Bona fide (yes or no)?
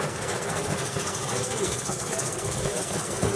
no